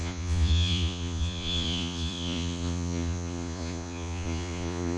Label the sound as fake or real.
fake